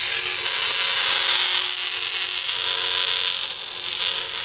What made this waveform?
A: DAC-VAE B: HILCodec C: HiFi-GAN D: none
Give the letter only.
D